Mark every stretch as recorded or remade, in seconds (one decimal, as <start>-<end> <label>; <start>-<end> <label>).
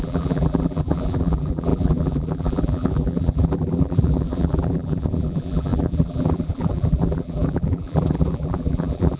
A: 0.0-9.2 remade